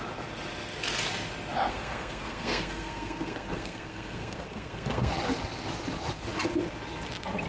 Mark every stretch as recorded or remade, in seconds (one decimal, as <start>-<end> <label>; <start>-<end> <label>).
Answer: 0.0-1.7 recorded; 1.7-5.1 remade; 5.1-7.5 recorded